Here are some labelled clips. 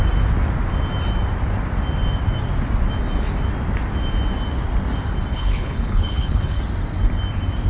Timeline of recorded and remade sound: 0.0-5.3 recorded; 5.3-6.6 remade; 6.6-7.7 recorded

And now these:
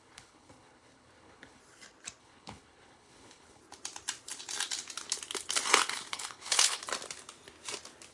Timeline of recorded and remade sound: 0.0-1.6 remade; 1.6-2.2 recorded; 2.2-3.6 remade; 3.6-6.1 recorded; 6.1-6.8 remade; 6.8-8.1 recorded

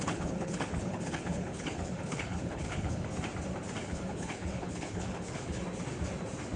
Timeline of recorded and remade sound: 0.0-3.1 remade; 3.1-3.8 recorded; 3.8-5.6 remade; 5.6-6.6 recorded